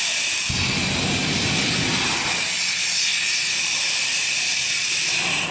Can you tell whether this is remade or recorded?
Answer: recorded